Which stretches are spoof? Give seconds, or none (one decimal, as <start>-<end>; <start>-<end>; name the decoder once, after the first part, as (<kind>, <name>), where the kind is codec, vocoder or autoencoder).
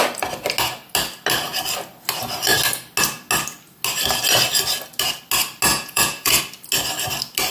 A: 5.7-6.4 (vocoder, Vocos)